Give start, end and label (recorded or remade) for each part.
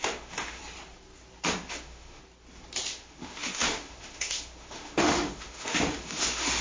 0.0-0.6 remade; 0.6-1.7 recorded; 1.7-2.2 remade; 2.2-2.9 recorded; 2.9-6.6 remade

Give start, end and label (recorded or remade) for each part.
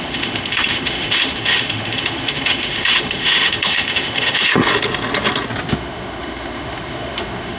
0.0-4.7 remade; 4.7-5.7 recorded; 5.7-7.6 remade